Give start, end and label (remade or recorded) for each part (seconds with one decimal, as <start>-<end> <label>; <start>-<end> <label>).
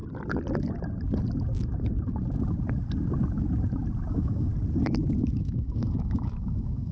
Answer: 0.0-4.1 recorded; 4.1-4.5 remade; 4.5-5.2 recorded; 5.2-6.9 remade